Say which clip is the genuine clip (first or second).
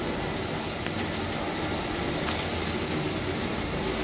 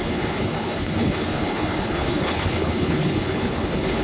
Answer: first